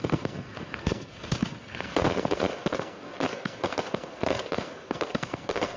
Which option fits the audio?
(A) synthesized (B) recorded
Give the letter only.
A